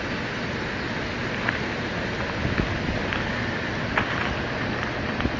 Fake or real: real